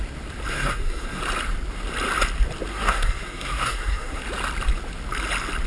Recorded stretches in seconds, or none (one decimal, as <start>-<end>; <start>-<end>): 0.0-0.5; 1.2-2.7; 4.2-5.7